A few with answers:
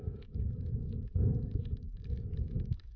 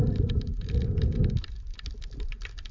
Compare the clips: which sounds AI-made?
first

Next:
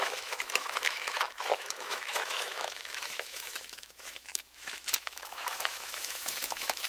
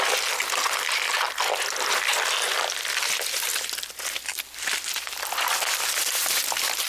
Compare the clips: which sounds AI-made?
first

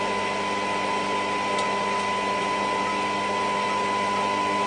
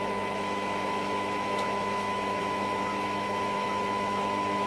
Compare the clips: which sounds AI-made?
second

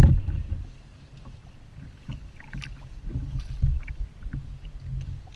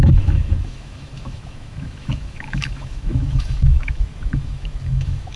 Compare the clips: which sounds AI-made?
second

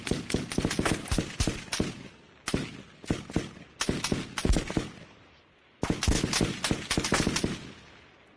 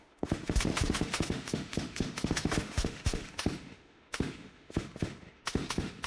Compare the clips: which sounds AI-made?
second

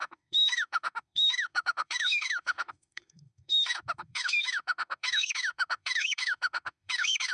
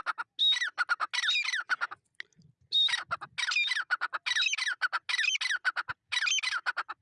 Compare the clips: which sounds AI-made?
first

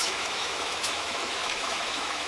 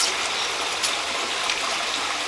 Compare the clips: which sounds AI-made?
first